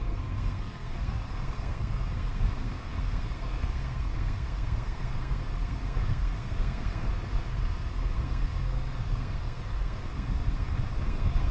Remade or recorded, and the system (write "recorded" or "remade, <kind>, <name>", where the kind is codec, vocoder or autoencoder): remade, codec, SNAC